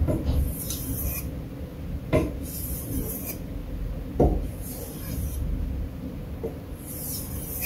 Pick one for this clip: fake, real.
real